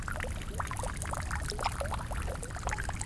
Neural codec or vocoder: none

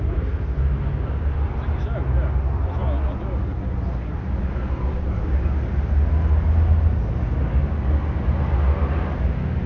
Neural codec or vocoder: none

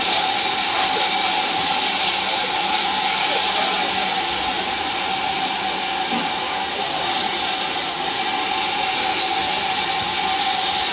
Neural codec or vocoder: none